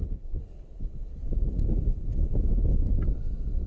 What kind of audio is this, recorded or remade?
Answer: recorded